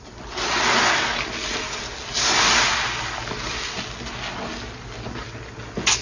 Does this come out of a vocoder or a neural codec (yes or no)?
no